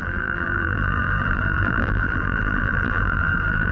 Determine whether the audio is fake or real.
fake